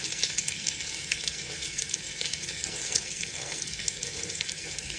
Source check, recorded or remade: remade